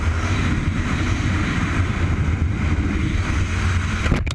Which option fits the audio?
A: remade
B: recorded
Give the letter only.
B